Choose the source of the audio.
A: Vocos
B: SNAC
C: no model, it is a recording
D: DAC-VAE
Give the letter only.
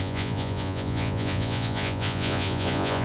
A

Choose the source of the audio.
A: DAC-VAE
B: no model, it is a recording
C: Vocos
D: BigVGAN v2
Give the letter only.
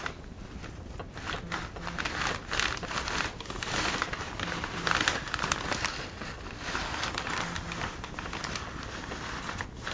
B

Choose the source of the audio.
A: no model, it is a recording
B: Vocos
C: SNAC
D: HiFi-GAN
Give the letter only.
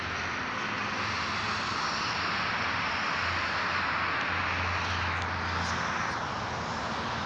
A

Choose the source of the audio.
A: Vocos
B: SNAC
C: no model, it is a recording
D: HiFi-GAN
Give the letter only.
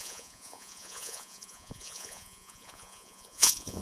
A